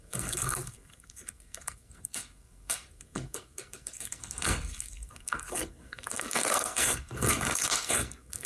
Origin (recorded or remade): remade